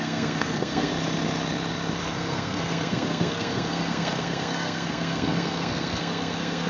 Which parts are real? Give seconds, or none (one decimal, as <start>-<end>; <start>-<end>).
0.9-2.0